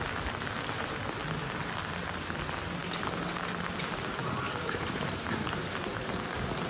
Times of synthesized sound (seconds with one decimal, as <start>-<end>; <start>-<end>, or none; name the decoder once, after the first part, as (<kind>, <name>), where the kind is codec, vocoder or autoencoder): 4.2-5.8 (vocoder, BigVGAN v2)